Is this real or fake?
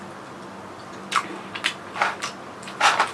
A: real